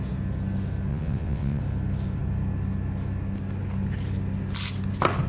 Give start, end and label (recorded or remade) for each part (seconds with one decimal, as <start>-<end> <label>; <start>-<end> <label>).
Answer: 0.0-0.9 recorded; 0.9-1.6 remade; 1.6-5.3 recorded